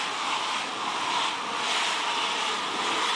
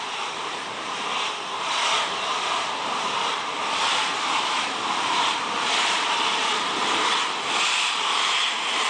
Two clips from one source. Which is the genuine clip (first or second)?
first